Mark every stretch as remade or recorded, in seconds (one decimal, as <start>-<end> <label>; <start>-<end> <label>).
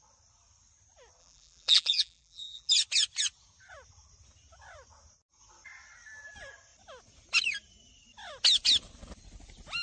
0.0-1.2 recorded; 1.2-2.7 remade; 2.7-9.8 recorded